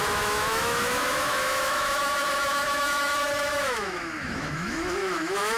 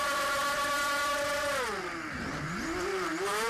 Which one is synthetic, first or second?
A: first